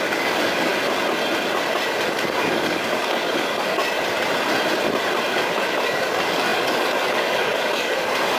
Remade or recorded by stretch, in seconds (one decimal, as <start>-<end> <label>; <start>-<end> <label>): 0.0-0.7 remade; 0.7-2.1 recorded; 2.1-3.8 remade; 3.8-5.3 recorded; 5.3-8.4 remade